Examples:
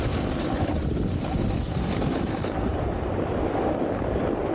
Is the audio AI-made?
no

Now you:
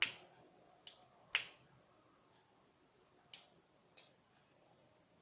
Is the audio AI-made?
no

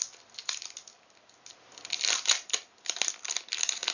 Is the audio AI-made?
no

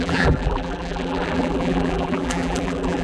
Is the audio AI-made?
yes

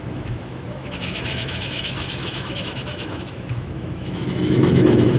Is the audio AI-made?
yes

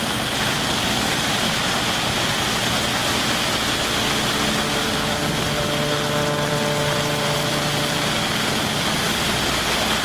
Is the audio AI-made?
no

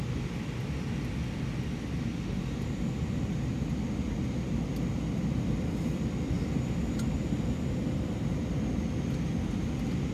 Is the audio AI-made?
no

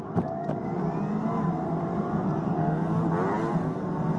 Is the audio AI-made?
no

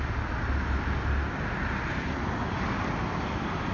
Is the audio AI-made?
no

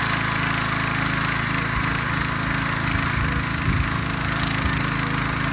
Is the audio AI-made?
no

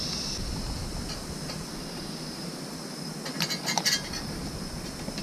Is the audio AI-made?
no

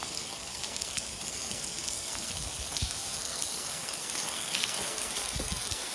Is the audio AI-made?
yes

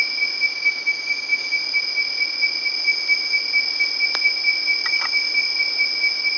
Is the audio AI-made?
no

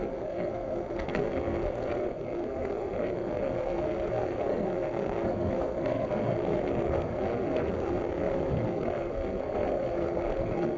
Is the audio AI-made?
yes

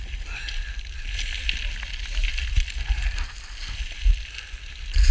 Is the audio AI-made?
no